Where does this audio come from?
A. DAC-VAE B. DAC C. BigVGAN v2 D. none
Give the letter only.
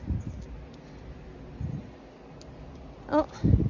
D